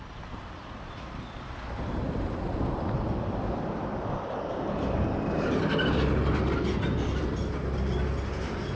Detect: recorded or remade recorded